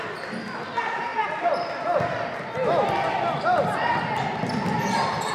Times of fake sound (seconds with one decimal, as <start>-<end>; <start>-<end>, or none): none